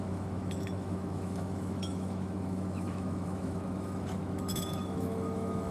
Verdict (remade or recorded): remade